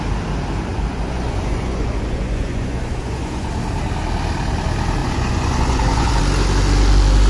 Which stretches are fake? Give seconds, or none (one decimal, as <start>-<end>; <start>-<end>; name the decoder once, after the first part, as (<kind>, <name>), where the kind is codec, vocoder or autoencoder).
0.7-3.5 (vocoder, Vocos); 5.0-6.2